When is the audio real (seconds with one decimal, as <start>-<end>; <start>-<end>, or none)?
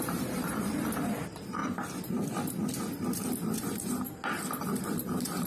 1.6-3.2; 4.2-4.8